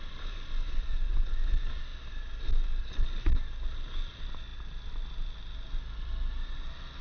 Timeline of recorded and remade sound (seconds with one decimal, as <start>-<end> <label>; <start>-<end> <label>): 0.0-7.0 recorded